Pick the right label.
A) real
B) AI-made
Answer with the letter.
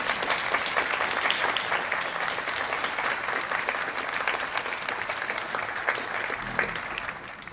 A